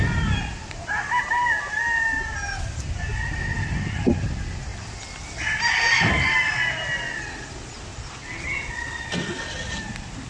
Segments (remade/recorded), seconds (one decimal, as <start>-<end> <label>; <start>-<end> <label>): 0.0-7.9 recorded; 7.9-9.1 remade; 9.1-10.3 recorded